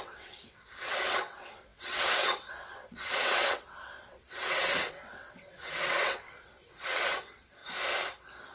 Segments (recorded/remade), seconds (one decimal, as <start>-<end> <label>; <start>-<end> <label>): 0.0-7.6 remade; 7.6-8.5 recorded